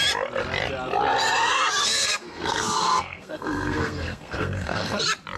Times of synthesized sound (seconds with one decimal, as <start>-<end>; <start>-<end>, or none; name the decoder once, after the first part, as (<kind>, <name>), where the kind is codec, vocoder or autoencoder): 1.8-5.0 (codec, SNAC)